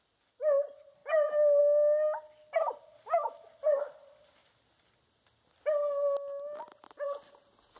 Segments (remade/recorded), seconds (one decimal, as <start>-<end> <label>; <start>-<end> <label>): 0.0-7.8 recorded